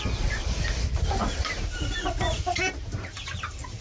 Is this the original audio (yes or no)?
yes